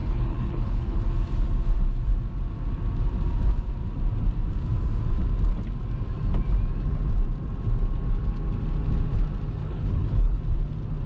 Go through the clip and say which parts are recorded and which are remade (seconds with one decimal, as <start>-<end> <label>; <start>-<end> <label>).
0.0-1.0 remade; 1.0-9.6 recorded; 9.6-10.4 remade; 10.4-11.1 recorded